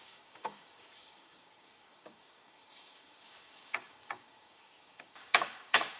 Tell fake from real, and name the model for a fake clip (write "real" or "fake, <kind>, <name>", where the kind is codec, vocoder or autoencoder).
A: fake, codec, DAC